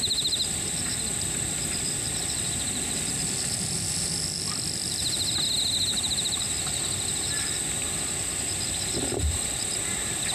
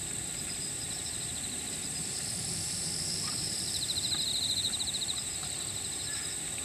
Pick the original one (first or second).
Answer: first